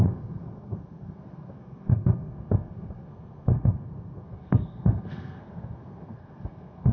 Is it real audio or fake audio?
fake